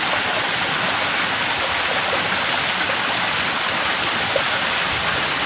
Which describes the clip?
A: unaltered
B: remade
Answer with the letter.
A